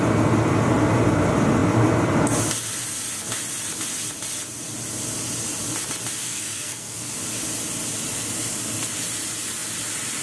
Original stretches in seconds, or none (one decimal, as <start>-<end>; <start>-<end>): 0.0-6.2; 7.1-10.2